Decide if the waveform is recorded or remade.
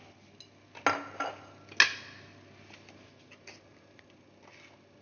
recorded